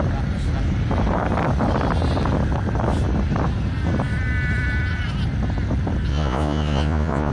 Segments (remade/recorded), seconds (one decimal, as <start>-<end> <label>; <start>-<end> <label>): 0.0-6.1 recorded; 6.1-7.3 remade